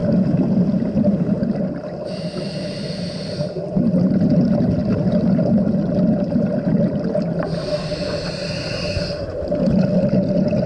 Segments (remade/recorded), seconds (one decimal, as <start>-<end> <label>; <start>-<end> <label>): 0.0-10.7 recorded